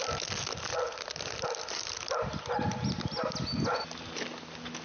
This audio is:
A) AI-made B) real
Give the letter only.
B